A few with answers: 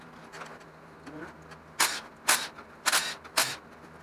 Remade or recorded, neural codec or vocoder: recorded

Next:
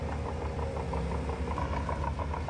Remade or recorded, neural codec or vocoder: recorded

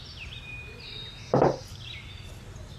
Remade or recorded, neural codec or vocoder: recorded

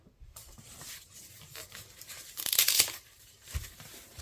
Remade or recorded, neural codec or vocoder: remade, vocoder, BigVGAN v2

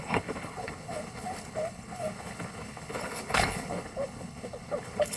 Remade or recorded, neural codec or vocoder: remade, codec, HILCodec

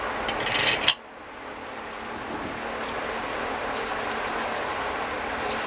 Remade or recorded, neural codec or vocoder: recorded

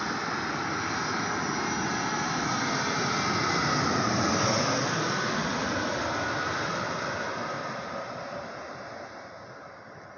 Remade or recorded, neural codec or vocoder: recorded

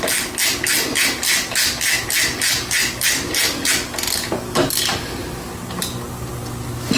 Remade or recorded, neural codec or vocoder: recorded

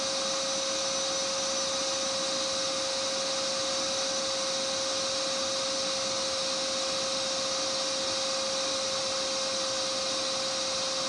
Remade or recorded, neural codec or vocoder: recorded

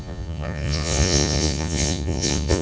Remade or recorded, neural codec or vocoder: remade, vocoder, Vocos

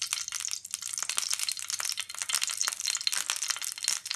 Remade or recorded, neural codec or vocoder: recorded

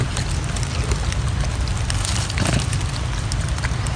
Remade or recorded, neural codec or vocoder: recorded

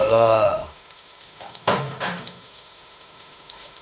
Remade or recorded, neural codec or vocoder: remade, autoencoder, DAC-VAE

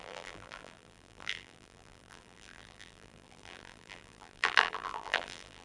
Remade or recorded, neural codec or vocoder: remade, vocoder, BigVGAN v2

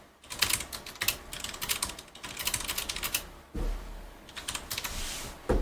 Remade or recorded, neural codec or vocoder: recorded